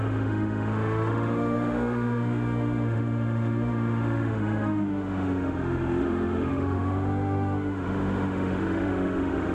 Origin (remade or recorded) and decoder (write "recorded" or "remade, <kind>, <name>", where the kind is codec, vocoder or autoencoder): remade, autoencoder, DAC-VAE